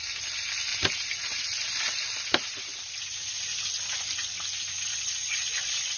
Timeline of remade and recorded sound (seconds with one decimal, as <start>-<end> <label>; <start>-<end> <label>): 0.0-4.9 recorded; 4.9-6.0 remade